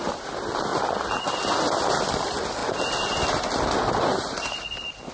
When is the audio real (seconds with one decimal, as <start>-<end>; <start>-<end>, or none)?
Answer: 0.7-1.2